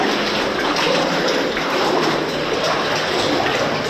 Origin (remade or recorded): recorded